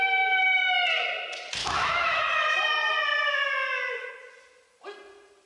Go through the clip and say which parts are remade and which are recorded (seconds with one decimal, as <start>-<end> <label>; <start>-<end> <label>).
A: 0.0-1.6 recorded; 1.6-2.2 remade; 2.2-5.5 recorded